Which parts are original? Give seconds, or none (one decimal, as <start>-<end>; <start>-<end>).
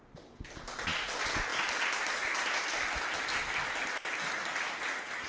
0.0-5.3